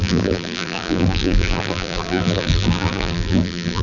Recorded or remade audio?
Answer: remade